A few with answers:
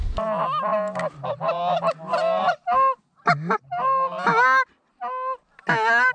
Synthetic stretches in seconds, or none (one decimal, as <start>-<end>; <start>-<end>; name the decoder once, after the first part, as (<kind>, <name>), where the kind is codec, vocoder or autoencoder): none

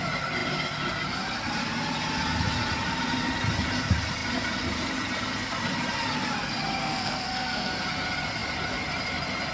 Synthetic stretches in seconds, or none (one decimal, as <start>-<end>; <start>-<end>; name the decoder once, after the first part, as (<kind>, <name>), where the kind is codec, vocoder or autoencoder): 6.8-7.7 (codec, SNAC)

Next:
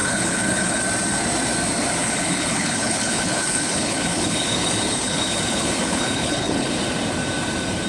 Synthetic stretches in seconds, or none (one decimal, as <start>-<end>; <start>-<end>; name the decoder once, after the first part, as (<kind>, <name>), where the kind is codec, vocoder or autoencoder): 0.0-0.8 (codec, HILCodec); 2.0-6.7

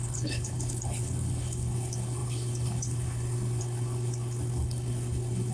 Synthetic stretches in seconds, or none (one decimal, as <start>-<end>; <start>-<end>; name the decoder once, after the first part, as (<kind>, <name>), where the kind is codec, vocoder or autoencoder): 0.0-5.5 (codec, HILCodec)

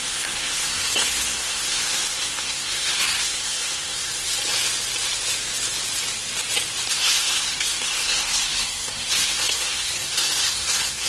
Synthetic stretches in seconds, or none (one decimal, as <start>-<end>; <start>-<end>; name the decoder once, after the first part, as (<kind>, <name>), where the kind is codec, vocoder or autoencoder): 0.0-4.3 (codec, SNAC); 6.9-11.1

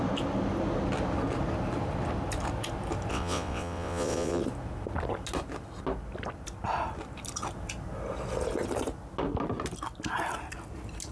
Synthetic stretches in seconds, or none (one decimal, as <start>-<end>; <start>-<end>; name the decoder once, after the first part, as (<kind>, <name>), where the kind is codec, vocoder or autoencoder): 3.1-4.4 (vocoder, WaveNeXt)

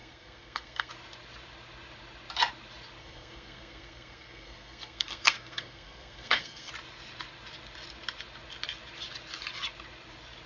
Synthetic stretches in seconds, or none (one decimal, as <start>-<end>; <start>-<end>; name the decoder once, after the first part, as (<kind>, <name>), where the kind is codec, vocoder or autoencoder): 0.0-0.9 (codec, SNAC); 3.0-6.7